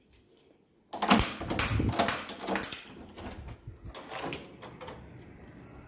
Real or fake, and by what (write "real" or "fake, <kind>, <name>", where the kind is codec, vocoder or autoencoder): real